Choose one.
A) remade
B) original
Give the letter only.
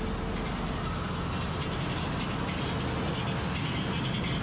B